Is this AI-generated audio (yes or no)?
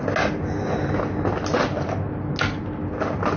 no